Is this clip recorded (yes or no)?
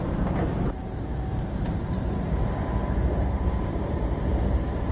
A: no